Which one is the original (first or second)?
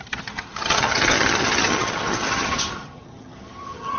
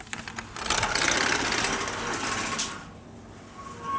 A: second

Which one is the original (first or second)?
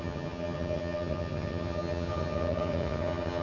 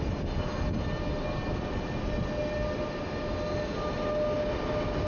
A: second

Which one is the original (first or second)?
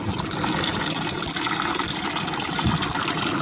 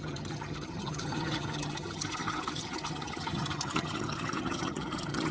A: first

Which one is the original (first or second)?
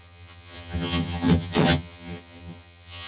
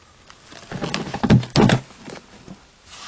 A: second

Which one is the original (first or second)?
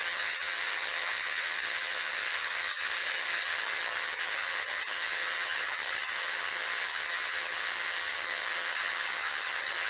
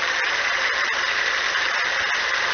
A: second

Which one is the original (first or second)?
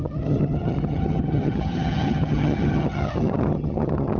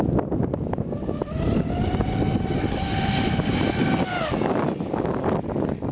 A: second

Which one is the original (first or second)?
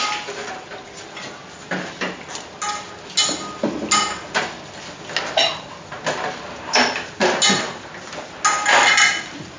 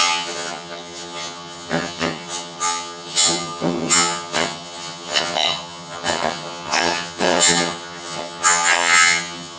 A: first